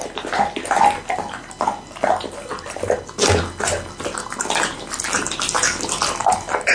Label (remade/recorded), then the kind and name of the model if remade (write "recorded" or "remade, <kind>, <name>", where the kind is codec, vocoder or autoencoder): recorded